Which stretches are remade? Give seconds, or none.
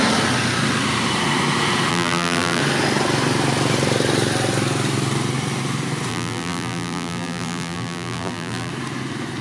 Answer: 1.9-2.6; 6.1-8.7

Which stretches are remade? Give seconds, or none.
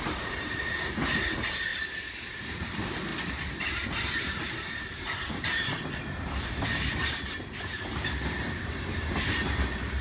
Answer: 0.0-3.1; 3.7-10.0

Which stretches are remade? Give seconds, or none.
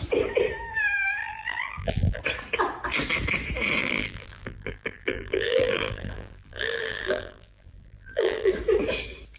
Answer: 1.2-2.2; 3.8-8.5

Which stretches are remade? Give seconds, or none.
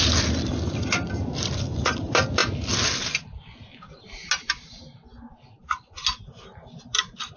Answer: 0.0-2.4; 6.8-7.4